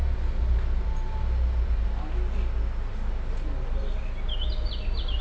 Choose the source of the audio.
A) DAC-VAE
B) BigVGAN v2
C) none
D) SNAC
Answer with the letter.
C